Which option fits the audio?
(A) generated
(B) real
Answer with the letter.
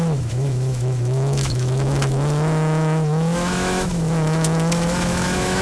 A